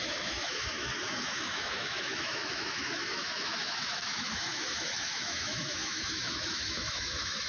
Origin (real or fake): fake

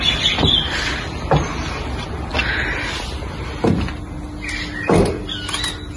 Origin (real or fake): real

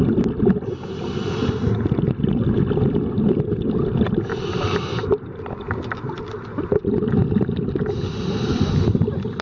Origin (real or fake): real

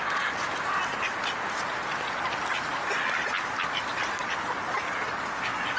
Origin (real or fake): real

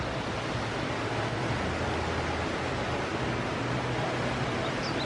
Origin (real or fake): real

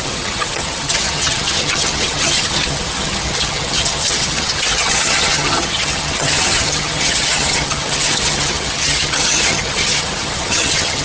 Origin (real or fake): fake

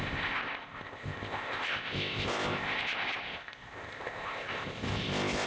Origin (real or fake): fake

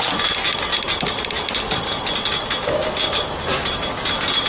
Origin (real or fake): real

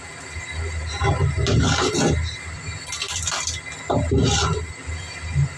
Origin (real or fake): real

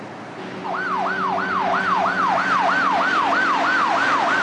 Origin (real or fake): real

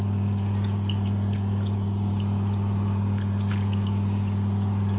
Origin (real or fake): fake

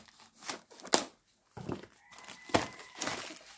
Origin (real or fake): real